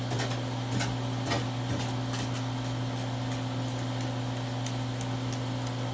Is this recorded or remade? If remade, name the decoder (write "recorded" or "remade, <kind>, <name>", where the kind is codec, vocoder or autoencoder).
recorded